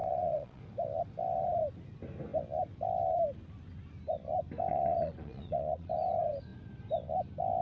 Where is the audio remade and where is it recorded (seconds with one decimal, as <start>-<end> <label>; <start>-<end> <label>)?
0.0-0.6 remade; 0.6-4.7 recorded; 4.7-5.9 remade; 5.9-7.6 recorded